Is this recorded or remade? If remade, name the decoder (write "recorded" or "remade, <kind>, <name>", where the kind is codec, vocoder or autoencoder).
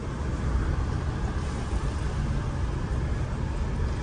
recorded